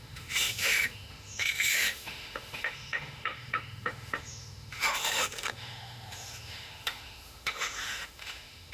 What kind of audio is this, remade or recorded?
remade